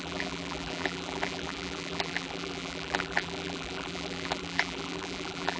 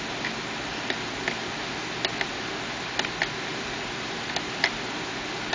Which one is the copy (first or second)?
first